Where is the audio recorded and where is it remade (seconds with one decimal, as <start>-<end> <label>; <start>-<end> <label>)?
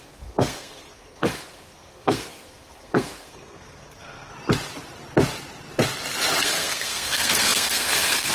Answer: 0.0-4.3 remade; 4.3-6.4 recorded; 6.4-8.3 remade